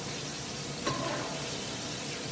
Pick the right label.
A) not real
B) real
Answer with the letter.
B